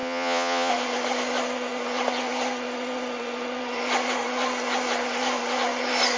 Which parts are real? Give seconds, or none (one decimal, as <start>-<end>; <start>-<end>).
0.7-6.2